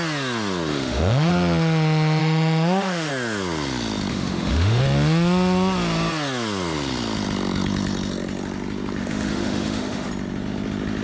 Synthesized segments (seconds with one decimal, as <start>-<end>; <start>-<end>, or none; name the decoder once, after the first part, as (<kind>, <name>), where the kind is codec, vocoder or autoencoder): 0.7-1.3 (autoencoder, DAC-VAE); 2.2-3.1; 4.1-4.8; 9.0-10.1